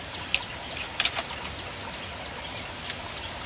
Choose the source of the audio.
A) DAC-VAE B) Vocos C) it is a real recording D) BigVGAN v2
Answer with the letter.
C